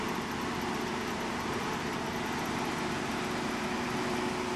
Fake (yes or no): no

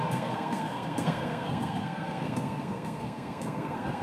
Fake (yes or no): yes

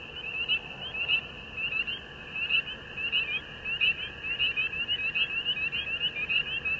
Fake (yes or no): no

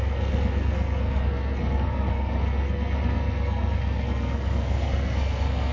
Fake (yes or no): yes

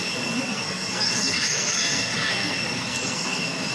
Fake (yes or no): yes